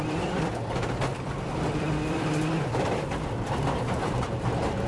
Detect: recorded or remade remade